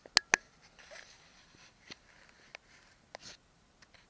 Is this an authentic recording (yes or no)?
yes